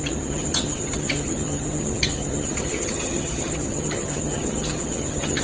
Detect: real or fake fake